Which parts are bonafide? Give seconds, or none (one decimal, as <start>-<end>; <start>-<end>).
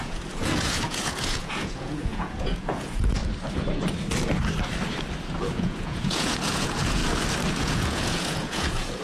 3.2-5.4; 7.0-7.5